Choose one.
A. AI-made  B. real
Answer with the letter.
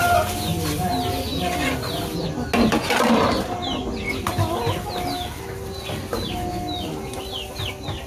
B